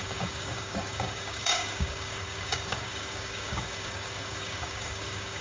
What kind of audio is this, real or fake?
fake